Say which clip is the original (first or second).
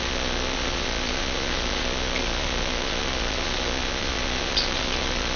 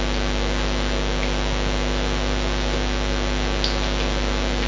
second